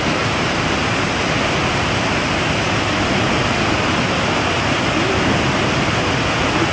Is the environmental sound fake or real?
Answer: real